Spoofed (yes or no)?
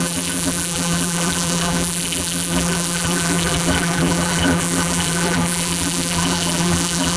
yes